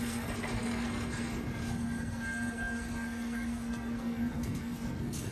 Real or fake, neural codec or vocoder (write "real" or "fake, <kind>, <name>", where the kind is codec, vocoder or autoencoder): fake, codec, SNAC